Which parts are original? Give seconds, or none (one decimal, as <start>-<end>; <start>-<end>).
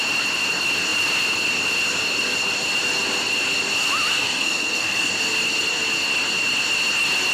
0.0-4.1; 5.1-7.3